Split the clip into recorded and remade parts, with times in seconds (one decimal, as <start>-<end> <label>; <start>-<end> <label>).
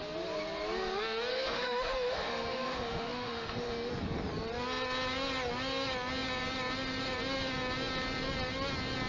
0.0-1.3 recorded; 1.3-3.9 remade; 3.9-9.1 recorded